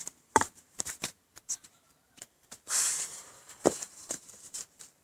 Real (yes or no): no